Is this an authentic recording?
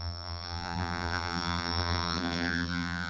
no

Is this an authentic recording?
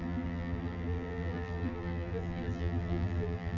no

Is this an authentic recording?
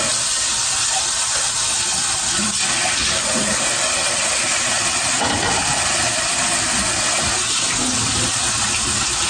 yes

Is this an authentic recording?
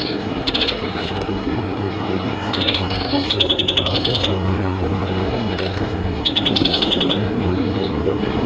no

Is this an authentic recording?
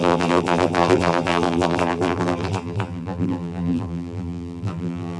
no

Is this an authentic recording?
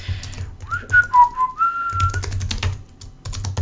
yes